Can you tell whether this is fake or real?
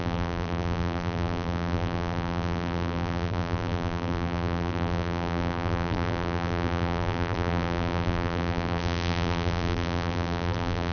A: fake